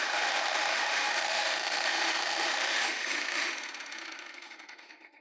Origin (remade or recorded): remade